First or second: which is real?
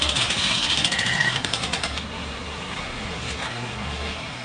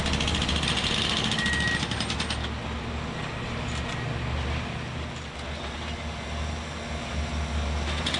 second